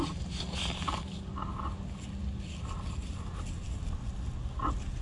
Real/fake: real